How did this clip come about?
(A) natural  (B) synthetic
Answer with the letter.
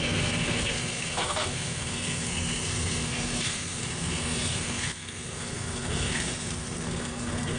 B